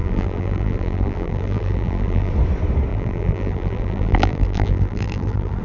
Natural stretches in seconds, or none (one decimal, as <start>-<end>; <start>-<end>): 2.3-2.9